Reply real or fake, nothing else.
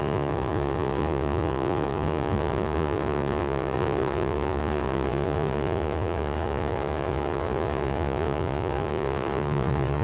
fake